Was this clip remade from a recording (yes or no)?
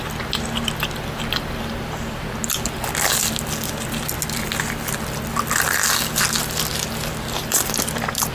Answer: no